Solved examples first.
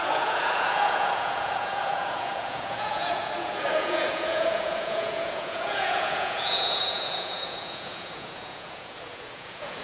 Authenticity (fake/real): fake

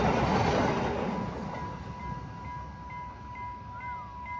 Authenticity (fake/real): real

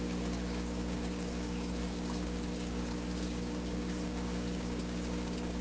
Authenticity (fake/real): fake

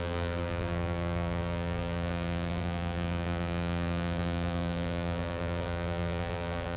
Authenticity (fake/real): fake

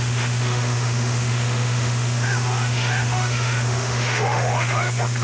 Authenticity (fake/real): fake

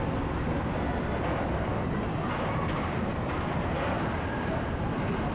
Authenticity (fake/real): real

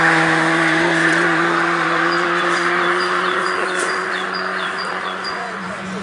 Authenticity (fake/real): fake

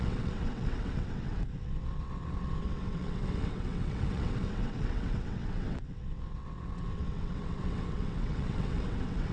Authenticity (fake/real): fake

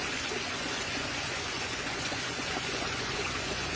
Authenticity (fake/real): fake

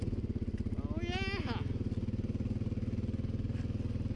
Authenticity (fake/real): real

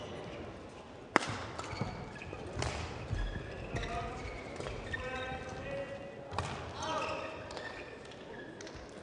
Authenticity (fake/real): real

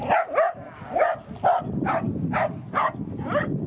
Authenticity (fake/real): real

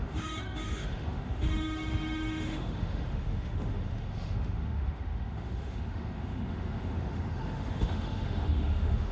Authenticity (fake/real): fake